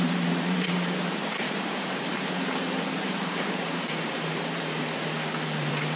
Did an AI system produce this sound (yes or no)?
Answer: yes